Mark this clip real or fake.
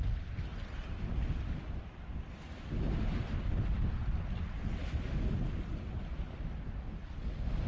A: real